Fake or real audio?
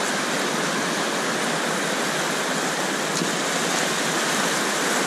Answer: real